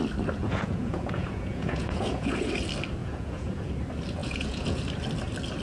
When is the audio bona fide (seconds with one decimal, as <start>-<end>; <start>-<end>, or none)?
0.0-0.4; 2.5-3.0; 3.7-4.2; 4.8-5.6